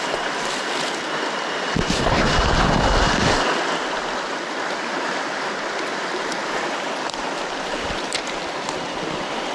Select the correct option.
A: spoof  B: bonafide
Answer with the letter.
B